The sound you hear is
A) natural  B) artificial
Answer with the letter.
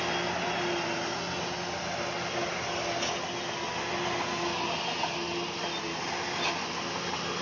A